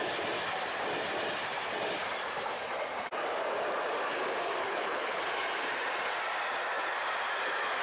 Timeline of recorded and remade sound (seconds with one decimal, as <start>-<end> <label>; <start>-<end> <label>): 0.0-4.6 recorded; 4.6-5.2 remade; 5.2-7.8 recorded